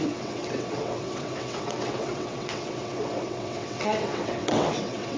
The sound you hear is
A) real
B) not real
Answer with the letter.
B